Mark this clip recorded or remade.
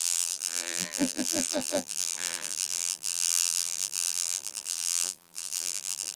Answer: remade